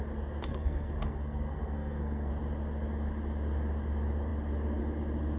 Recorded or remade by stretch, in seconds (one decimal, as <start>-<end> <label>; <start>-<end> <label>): 0.0-0.5 recorded; 0.5-2.3 remade; 2.3-5.4 recorded